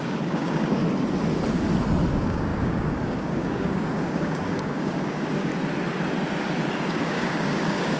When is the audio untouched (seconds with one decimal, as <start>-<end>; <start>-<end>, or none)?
0.8-2.1; 5.5-6.7